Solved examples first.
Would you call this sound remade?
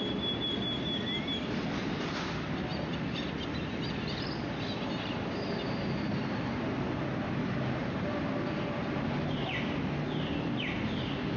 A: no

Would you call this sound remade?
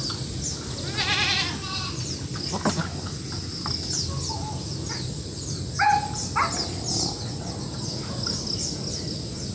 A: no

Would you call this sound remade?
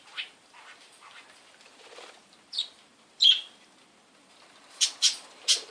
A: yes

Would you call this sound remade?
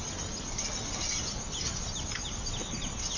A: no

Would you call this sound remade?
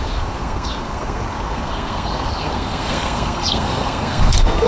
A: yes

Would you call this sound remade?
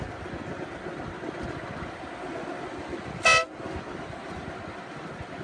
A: no